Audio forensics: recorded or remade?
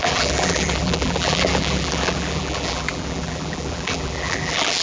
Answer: remade